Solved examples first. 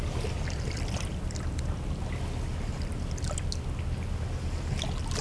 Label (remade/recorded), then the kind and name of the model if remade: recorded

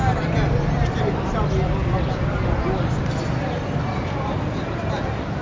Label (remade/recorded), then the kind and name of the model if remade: recorded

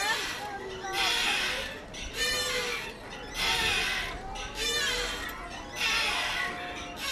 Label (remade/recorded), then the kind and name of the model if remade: recorded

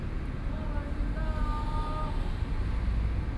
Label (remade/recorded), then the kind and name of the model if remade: recorded